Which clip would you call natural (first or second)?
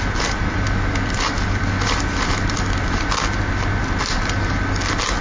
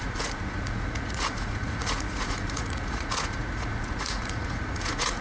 first